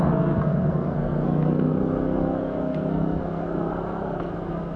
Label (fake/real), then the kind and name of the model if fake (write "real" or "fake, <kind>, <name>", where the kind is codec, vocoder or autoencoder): fake, codec, SNAC